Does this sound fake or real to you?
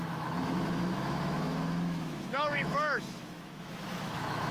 fake